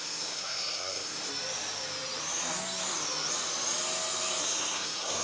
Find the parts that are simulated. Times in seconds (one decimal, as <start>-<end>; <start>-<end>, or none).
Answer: 0.0-1.3; 4.4-5.2